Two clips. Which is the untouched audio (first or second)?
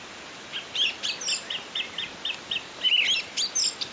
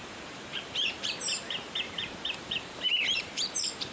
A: first